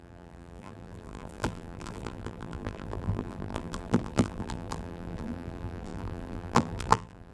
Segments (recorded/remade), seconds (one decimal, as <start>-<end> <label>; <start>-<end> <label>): 0.0-7.3 remade

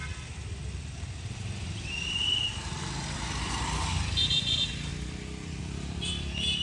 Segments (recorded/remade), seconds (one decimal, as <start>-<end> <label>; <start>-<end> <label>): 0.0-3.4 recorded; 3.4-4.9 remade; 4.9-5.6 recorded; 5.6-6.6 remade

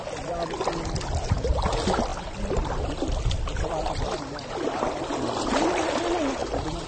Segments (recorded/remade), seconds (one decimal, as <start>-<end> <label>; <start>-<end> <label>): 0.0-2.1 recorded; 2.1-5.9 remade; 5.9-6.4 recorded; 6.4-6.9 remade

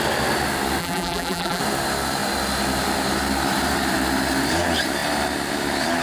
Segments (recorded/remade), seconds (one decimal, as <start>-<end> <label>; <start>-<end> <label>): 0.0-0.8 recorded; 0.8-1.6 remade; 1.6-6.0 recorded

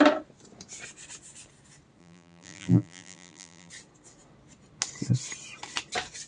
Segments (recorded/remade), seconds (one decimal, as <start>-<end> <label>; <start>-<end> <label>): 0.0-2.0 recorded; 2.0-3.7 remade; 3.7-6.3 recorded

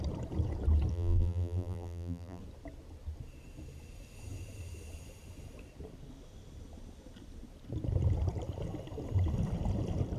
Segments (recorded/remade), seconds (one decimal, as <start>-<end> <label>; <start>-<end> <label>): 0.0-0.9 recorded; 0.9-2.4 remade; 2.4-10.2 recorded